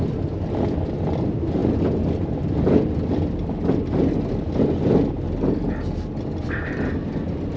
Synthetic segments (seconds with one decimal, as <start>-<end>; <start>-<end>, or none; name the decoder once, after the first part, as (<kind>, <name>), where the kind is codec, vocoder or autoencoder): none